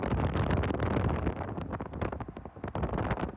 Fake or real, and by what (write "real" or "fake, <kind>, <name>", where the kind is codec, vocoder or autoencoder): real